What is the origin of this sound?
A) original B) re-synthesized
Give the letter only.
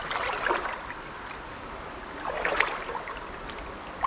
A